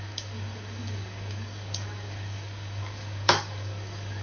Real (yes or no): no